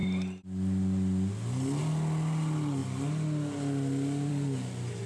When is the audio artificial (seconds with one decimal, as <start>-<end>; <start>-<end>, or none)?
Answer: none